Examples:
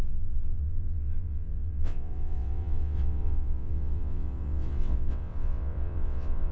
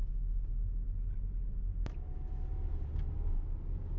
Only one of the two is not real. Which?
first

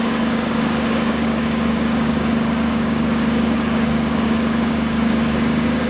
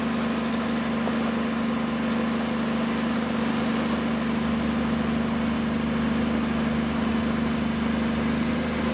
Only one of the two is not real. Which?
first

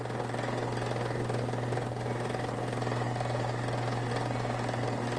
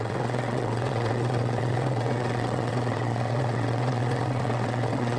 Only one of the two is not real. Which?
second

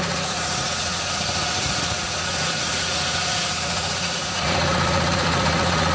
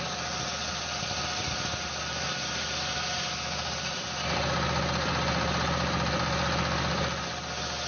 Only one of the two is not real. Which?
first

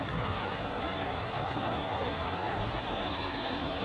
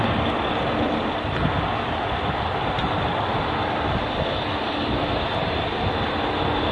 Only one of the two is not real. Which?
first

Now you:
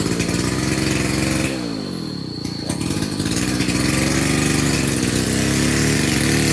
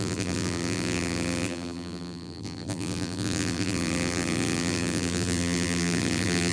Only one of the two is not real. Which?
second